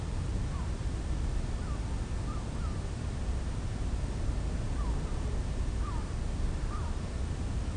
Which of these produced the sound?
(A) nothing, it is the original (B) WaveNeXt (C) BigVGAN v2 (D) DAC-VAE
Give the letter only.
A